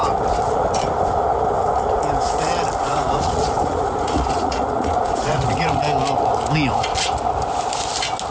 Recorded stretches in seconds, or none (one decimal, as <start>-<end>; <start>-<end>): 0.0-2.8; 5.8-8.3